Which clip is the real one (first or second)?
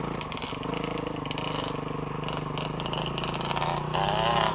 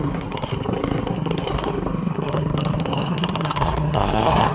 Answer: first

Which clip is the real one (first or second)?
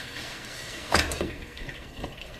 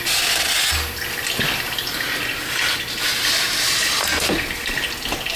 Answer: second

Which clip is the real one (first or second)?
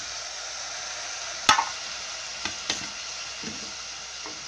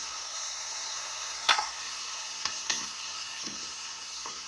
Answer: first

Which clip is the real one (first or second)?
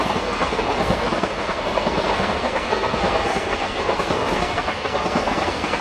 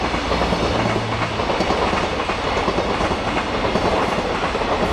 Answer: second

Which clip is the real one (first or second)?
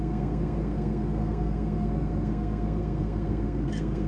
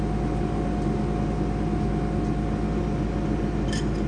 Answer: second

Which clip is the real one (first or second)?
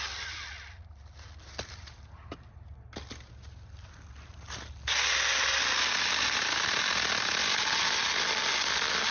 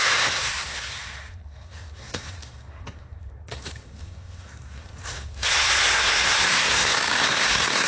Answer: first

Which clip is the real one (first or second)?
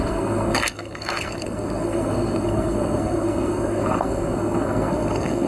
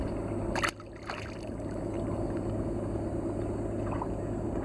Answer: second